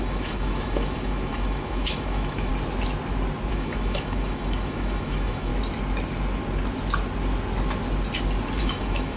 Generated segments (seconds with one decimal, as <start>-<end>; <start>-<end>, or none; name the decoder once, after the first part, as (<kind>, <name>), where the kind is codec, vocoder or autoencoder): 0.0-2.5 (autoencoder, DAC-VAE); 3.5-5.5; 8.6-9.2